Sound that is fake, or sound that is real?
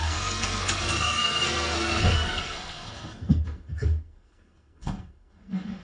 fake